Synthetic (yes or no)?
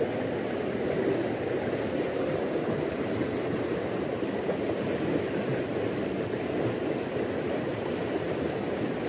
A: no